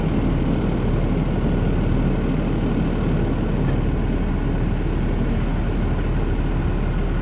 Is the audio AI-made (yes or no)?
no